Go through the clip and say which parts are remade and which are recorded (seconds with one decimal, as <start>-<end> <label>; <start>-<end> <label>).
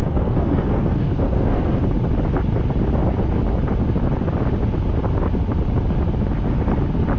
0.0-1.8 remade; 1.8-7.2 recorded